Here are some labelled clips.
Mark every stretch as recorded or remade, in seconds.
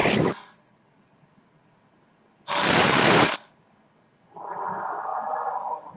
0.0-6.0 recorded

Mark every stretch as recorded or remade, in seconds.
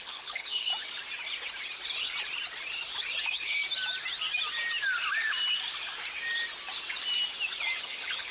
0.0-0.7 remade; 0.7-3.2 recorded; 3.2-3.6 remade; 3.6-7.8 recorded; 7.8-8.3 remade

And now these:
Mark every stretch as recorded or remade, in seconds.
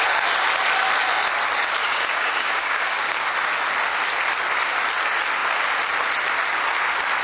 0.0-1.8 recorded; 1.8-3.3 remade; 3.3-7.2 recorded